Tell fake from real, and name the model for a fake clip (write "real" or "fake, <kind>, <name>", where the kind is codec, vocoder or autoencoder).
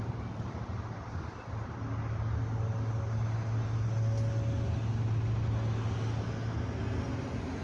real